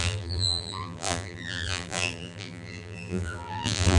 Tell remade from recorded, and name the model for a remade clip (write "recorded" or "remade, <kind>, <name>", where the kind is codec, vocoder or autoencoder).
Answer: remade, vocoder, BigVGAN v2